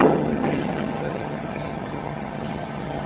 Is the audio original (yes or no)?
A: no